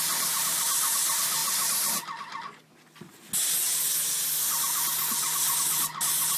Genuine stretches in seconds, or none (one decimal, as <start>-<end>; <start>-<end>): 0.0-6.4